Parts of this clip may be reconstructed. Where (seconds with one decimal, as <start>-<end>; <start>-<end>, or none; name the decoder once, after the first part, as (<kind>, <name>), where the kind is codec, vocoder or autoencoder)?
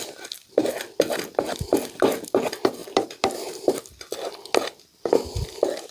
none